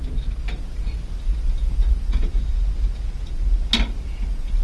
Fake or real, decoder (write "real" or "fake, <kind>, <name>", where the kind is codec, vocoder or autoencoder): real